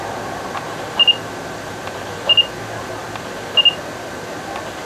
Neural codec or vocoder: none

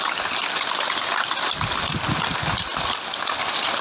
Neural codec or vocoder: none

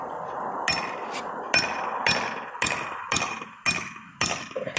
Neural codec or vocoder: none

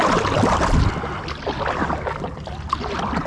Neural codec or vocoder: none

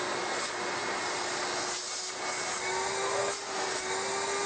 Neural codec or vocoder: none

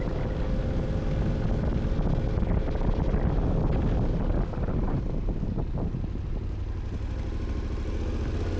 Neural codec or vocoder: none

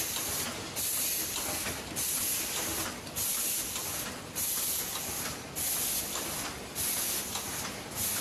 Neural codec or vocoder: none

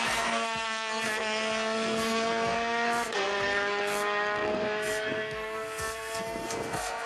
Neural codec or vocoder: codec, SNAC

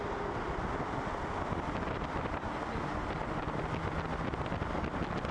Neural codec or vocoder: none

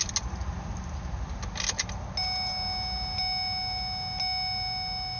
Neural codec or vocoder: none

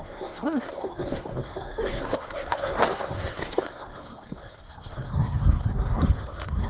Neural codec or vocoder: codec, SNAC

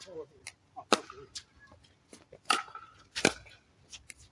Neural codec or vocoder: none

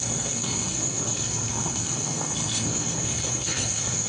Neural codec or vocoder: codec, SNAC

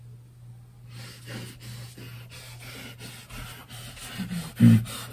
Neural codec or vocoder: none